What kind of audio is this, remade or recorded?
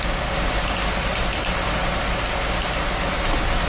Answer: recorded